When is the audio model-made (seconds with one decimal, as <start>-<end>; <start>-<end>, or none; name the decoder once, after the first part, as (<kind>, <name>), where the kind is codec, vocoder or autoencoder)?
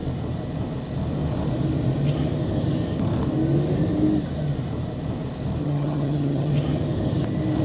5.6-6.5 (vocoder, HiFi-GAN)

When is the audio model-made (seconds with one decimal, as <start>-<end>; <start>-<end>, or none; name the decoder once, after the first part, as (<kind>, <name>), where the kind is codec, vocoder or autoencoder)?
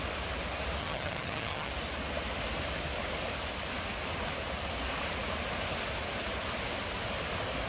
0.8-1.7 (vocoder, HiFi-GAN)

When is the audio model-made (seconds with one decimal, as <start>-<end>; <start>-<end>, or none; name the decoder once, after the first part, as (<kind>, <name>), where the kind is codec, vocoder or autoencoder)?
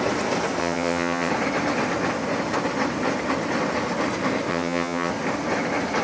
0.6-1.3 (vocoder, HiFi-GAN); 4.5-5.1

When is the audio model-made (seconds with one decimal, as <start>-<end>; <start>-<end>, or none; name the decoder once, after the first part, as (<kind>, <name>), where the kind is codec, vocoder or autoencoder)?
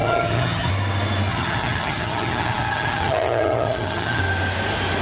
0.0-0.7 (vocoder, HiFi-GAN); 1.3-4.2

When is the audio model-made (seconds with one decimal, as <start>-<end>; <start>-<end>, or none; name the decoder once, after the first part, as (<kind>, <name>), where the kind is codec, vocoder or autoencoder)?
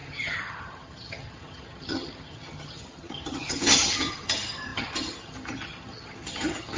0.0-6.8 (vocoder, HiFi-GAN)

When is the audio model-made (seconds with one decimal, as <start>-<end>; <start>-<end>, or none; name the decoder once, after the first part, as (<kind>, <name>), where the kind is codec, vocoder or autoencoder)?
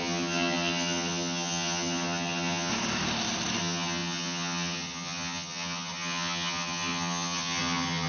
0.0-2.7 (vocoder, HiFi-GAN); 3.6-8.1